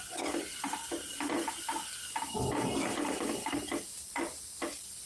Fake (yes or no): no